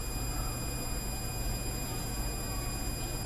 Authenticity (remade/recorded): recorded